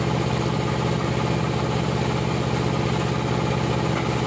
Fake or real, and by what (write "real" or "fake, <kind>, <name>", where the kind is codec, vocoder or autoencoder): real